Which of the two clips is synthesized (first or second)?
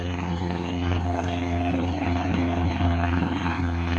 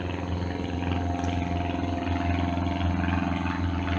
first